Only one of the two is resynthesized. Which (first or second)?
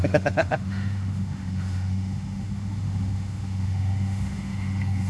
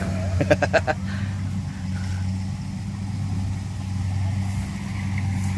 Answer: first